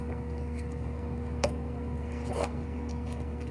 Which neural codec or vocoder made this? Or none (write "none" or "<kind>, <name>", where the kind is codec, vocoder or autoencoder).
codec, SNAC